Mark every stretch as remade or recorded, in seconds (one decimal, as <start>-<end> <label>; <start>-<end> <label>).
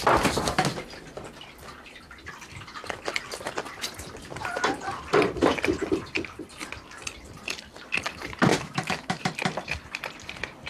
0.0-8.5 recorded; 8.5-9.2 remade; 9.2-10.7 recorded